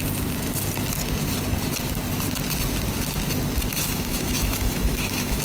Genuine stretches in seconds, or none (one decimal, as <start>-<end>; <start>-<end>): 0.0-3.7